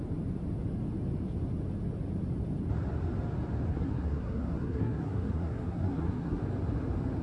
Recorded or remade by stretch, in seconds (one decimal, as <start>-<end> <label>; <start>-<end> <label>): 0.0-3.7 recorded; 3.7-6.4 remade; 6.4-7.2 recorded

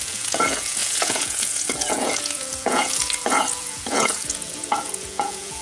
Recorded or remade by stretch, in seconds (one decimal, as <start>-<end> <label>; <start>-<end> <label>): 0.0-5.6 remade

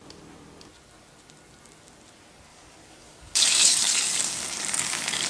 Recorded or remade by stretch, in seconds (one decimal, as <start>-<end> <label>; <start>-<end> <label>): 0.0-2.5 recorded; 2.5-5.3 remade

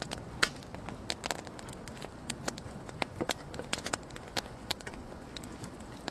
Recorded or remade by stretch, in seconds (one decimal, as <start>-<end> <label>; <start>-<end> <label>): 0.0-0.6 remade; 0.6-1.9 recorded; 1.9-6.1 remade

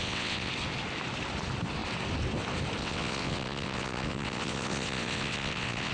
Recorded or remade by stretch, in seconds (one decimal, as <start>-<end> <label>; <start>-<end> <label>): 0.0-0.5 remade; 0.5-2.8 recorded; 2.8-5.9 remade

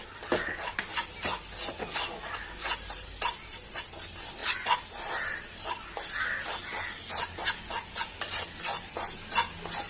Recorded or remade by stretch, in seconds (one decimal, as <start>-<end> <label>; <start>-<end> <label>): 0.0-1.8 recorded; 1.8-2.7 remade; 2.7-9.9 recorded

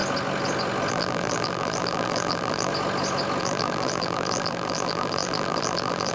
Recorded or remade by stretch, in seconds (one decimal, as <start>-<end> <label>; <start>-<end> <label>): 0.0-0.9 recorded; 0.9-2.7 remade; 2.7-3.4 recorded; 3.4-6.1 remade

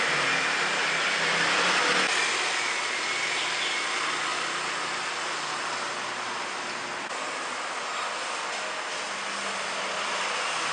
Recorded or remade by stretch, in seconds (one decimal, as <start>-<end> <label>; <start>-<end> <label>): 0.0-10.7 recorded